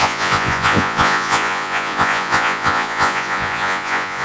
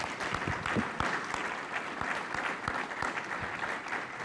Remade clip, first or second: first